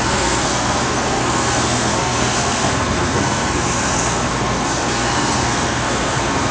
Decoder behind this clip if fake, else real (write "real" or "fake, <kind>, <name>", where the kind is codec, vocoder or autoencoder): fake, codec, SNAC